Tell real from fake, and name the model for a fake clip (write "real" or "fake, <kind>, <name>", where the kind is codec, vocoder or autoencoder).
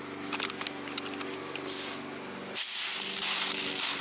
real